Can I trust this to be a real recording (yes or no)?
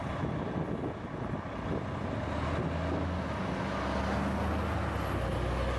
yes